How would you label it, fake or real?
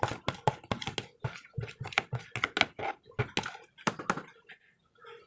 real